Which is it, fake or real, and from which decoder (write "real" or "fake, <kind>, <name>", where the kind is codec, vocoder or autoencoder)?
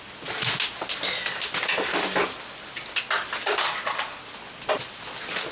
real